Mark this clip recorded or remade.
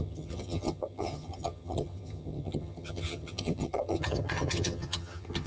remade